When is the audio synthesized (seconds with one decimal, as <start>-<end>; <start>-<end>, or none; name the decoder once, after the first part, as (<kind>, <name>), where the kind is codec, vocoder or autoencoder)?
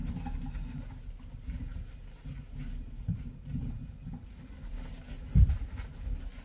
none